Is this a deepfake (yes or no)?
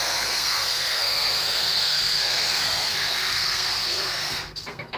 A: yes